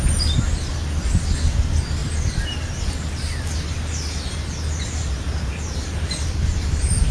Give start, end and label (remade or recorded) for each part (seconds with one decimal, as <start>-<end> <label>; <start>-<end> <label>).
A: 0.0-7.1 recorded